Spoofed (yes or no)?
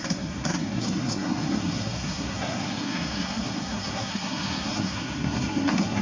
yes